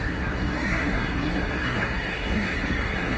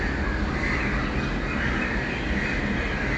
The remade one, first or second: first